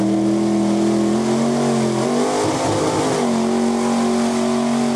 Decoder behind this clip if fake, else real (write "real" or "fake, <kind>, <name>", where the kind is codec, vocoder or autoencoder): real